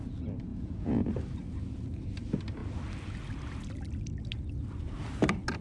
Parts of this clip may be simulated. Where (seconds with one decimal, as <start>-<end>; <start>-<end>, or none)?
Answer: 0.5-1.1